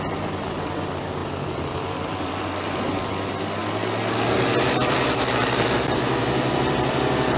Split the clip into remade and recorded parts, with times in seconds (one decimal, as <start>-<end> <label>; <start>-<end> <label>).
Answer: 0.0-3.6 remade; 3.6-4.5 recorded; 4.5-7.4 remade